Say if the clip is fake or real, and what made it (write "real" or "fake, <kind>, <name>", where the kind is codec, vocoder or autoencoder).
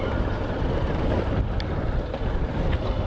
real